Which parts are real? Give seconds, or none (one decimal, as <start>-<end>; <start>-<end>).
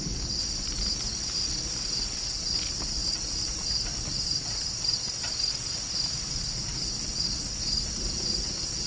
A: 0.0-8.9